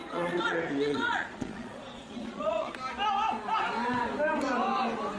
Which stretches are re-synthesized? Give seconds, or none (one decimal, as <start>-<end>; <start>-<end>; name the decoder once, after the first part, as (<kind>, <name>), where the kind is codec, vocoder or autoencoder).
0.0-2.7 (vocoder, Vocos)